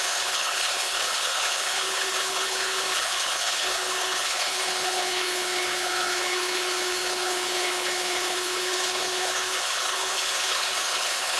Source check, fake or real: fake